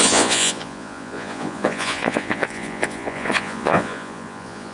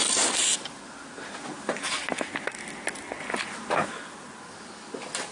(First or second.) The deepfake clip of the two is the first